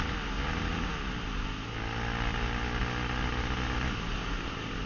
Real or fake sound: real